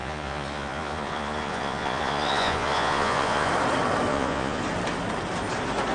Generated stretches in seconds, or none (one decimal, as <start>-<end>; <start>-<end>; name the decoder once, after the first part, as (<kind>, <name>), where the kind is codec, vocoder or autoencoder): 0.0-3.5 (vocoder, Vocos); 4.1-4.6

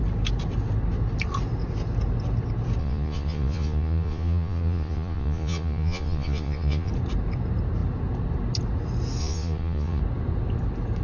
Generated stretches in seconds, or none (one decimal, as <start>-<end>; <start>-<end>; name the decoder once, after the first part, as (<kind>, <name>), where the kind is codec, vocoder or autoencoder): 2.8-6.9 (vocoder, Vocos); 9.2-10.0

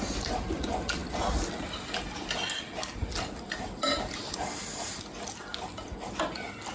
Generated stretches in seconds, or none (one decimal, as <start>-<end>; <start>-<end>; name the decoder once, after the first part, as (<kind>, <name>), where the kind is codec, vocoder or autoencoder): none

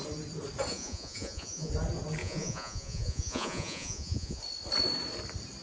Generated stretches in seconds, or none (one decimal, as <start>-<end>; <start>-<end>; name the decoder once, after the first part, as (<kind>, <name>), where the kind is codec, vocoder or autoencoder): 0.7-1.7 (vocoder, Vocos); 2.2-4.4